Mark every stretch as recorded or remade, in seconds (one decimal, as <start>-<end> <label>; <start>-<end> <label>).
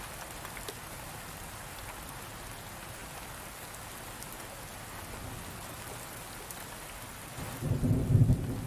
0.0-8.7 recorded